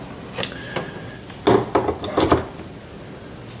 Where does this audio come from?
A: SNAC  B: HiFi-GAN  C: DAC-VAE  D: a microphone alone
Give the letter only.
D